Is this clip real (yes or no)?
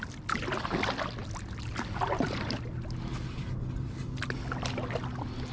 yes